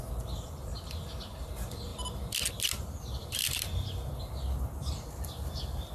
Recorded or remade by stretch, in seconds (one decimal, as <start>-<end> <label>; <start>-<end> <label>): 0.0-0.7 remade; 0.7-1.5 recorded; 1.5-1.9 remade; 1.9-2.5 recorded; 2.5-5.9 remade